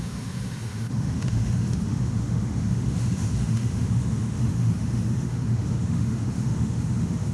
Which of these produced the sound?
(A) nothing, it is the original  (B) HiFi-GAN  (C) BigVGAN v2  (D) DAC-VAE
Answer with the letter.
D